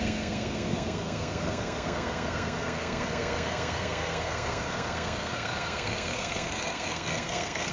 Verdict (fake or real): fake